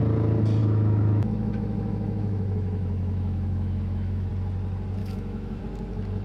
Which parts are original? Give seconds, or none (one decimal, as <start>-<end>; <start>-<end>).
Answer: 0.0-0.6; 4.3-5.0; 5.6-6.2